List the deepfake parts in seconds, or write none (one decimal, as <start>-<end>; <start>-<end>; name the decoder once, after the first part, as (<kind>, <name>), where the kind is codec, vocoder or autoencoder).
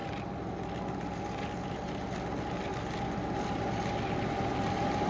none